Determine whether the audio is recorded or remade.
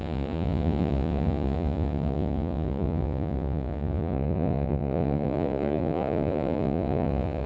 remade